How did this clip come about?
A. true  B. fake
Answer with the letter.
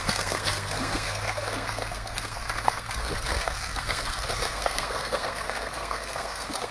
B